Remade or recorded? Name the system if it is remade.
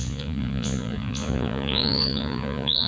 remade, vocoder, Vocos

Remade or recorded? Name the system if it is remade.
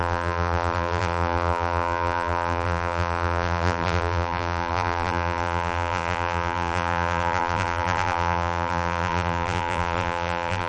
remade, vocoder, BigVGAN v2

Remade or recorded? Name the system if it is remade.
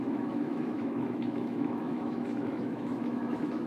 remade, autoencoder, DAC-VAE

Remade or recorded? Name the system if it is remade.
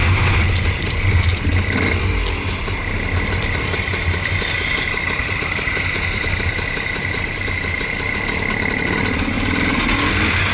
recorded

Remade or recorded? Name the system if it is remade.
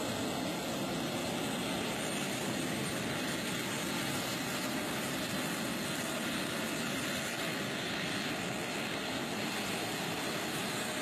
recorded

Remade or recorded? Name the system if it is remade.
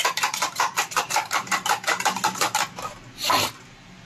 remade, vocoder, BigVGAN v2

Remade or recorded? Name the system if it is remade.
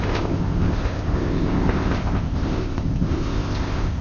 remade, codec, ZipCodec